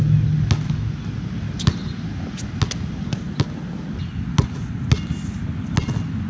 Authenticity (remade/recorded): recorded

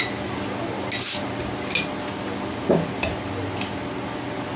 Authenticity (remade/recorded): recorded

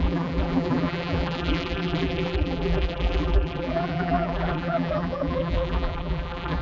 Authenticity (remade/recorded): remade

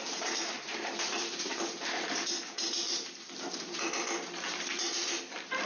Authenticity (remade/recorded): remade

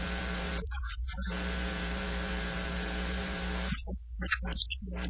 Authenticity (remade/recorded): remade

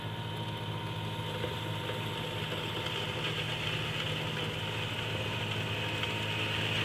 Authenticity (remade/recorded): recorded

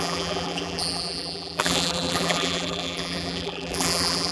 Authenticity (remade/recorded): remade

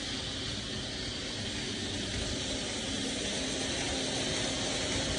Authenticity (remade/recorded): recorded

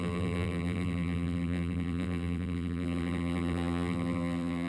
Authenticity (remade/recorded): remade